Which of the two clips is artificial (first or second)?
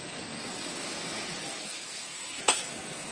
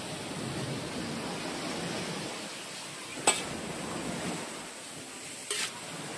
first